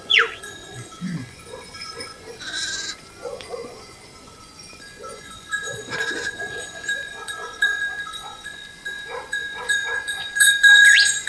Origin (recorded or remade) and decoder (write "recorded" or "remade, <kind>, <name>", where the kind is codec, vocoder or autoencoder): remade, vocoder, Vocos